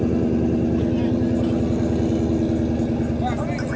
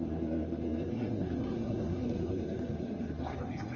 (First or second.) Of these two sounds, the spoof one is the second